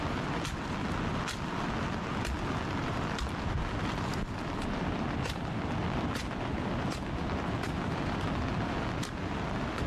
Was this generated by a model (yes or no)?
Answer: no